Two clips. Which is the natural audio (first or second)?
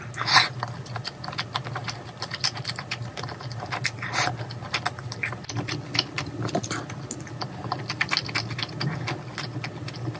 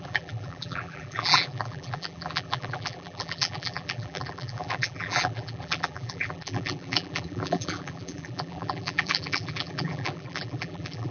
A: first